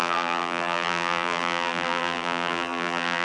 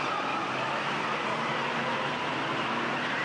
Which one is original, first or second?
second